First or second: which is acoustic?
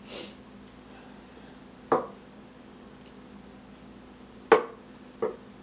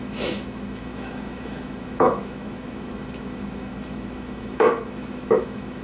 first